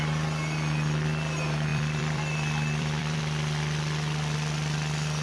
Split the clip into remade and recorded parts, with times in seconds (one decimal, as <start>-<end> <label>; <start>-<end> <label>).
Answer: 0.0-1.7 recorded; 1.7-3.2 remade; 3.2-5.2 recorded